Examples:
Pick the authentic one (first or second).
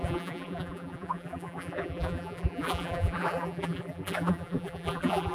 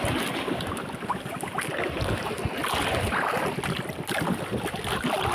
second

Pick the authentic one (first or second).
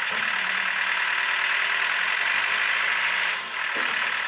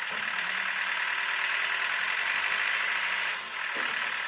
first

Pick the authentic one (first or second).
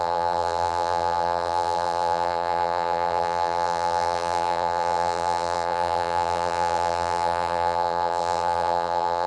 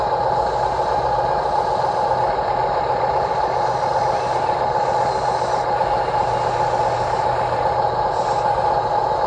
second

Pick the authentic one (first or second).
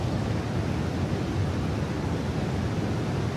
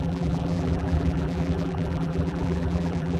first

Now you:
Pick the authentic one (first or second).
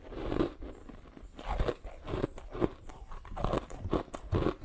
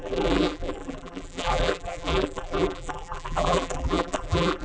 first